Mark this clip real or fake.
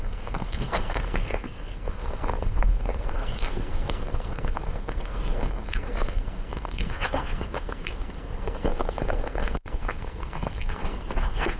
fake